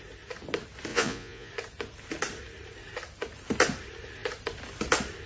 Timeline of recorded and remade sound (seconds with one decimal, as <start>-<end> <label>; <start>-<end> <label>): 0.0-0.9 recorded; 0.9-1.5 remade; 1.5-5.3 recorded